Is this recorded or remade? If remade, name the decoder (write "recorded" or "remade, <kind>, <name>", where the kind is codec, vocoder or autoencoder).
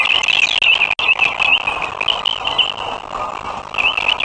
recorded